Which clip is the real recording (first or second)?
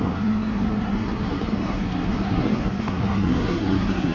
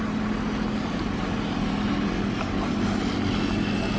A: second